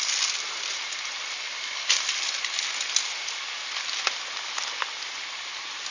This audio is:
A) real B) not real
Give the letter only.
A